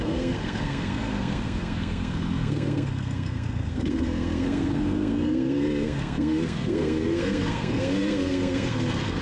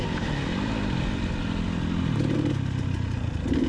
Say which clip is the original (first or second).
second